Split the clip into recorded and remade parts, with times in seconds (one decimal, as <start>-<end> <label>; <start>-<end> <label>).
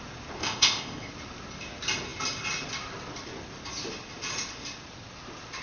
0.0-0.4 recorded; 0.4-1.1 remade; 1.1-5.6 recorded